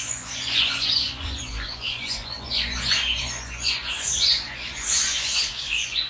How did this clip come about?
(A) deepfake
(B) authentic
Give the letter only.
A